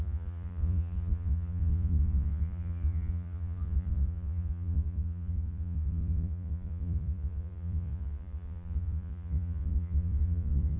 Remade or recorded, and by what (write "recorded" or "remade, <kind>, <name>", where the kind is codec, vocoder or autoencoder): remade, vocoder, Vocos